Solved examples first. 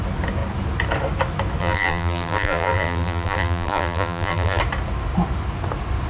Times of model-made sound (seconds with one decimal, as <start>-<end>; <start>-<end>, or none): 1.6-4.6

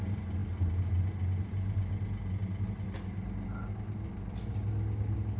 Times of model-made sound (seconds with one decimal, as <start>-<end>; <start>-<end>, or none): none

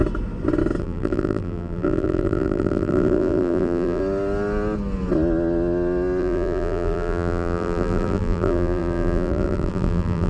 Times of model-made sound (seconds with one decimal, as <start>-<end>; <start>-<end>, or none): 0.8-4.0; 6.2-10.3

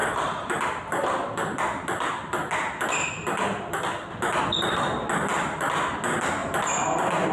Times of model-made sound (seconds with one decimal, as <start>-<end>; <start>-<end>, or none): 5.3-6.0; 6.4-7.3